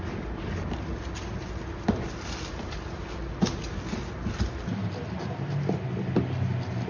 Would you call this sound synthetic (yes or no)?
no